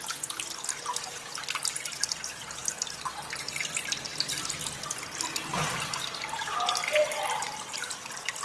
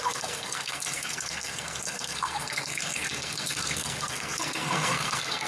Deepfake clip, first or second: second